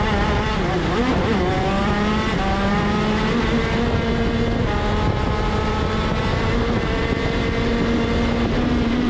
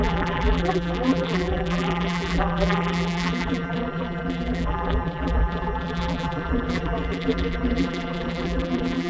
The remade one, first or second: second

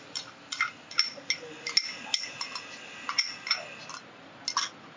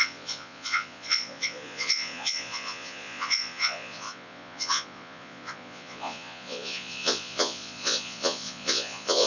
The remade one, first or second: second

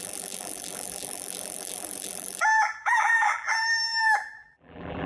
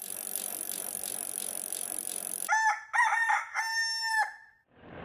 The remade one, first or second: first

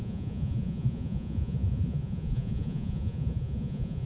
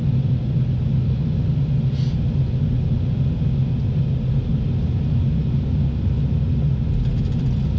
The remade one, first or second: first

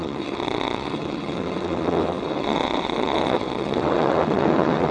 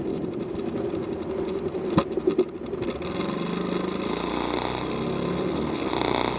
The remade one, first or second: first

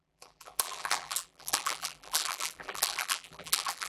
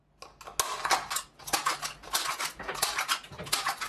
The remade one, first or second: first